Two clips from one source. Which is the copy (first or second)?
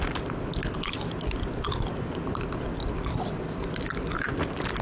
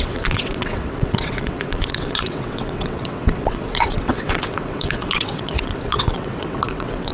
second